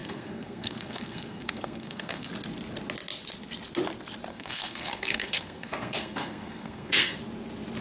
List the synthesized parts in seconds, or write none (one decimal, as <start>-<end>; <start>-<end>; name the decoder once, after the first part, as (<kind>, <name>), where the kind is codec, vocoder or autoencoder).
0.0-2.3 (codec, SNAC); 4.3-7.2